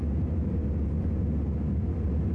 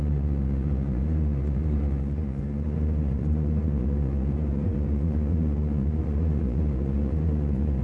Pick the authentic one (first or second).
first